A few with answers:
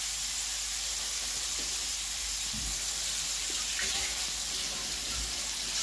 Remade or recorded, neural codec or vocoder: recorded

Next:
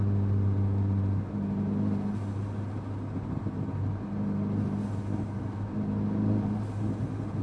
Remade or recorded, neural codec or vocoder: recorded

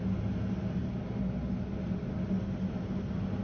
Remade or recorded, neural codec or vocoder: recorded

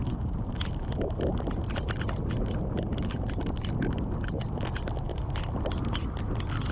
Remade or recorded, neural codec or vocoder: recorded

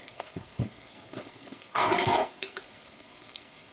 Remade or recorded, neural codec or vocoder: remade, codec, SNAC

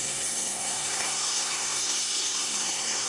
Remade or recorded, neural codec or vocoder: remade, codec, SNAC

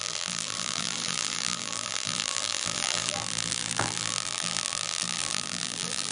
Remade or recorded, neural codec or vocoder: remade, vocoder, BigVGAN v2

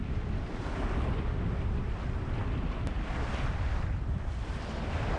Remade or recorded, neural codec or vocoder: remade, vocoder, BigVGAN v2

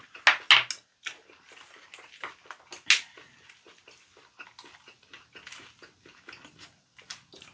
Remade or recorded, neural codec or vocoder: recorded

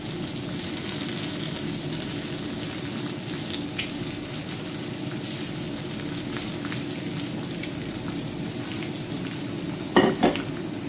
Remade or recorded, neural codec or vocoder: recorded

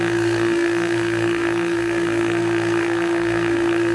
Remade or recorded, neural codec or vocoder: remade, codec, SNAC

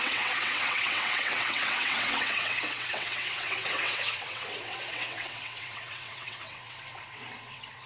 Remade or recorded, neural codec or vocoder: remade, vocoder, WaveNeXt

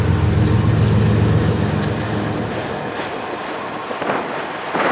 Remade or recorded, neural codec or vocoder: recorded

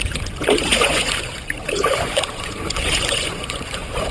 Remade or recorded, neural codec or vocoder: remade, vocoder, Vocos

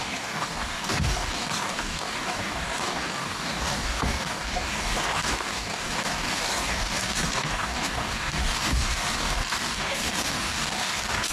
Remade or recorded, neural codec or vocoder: remade, codec, DAC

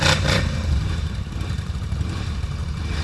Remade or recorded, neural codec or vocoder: remade, vocoder, BigVGAN v2